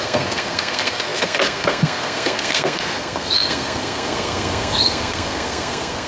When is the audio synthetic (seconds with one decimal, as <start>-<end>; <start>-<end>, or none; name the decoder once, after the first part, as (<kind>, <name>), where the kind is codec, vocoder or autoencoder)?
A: 0.0-6.1 (codec, SNAC)